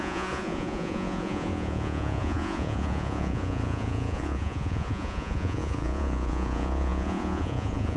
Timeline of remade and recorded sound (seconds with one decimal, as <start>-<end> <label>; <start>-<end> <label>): 0.0-8.0 remade